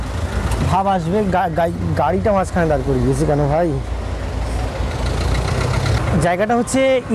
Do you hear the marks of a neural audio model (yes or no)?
no